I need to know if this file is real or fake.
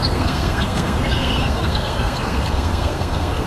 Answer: fake